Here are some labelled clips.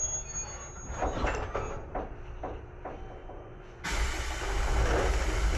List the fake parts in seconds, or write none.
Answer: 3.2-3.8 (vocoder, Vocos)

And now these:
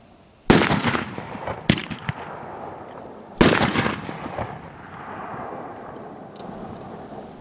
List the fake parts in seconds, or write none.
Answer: 6.4-7.4 (vocoder, BigVGAN v2)

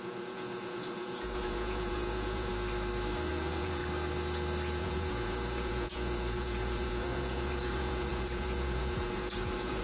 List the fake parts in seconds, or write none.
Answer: 0.0-2.5 (vocoder, Vocos); 3.3-3.8; 4.8-9.8

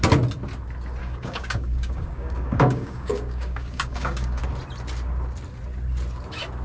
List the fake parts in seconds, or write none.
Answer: 1.0-4.4 (codec, DAC)